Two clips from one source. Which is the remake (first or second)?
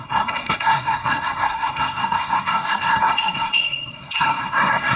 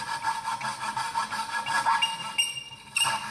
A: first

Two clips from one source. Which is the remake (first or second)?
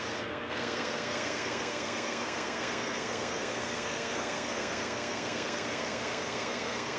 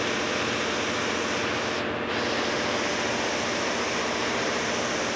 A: first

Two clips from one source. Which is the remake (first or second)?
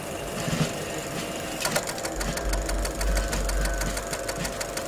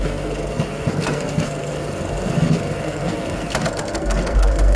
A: second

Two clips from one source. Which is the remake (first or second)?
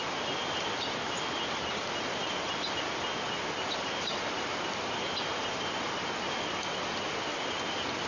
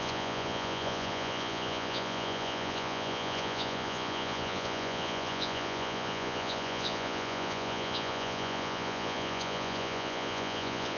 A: second